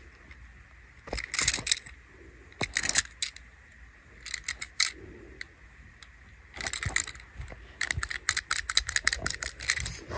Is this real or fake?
real